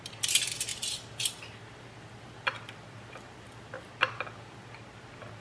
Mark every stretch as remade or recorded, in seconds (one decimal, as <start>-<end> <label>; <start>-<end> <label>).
0.0-0.7 recorded; 0.7-3.9 remade; 3.9-5.4 recorded